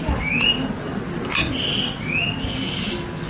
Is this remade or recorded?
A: recorded